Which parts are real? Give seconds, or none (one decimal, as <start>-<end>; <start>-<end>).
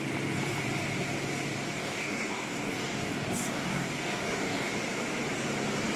0.0-1.8; 4.7-6.0